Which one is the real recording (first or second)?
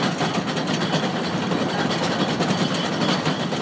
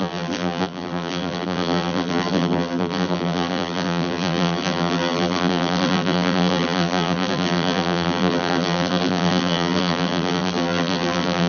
first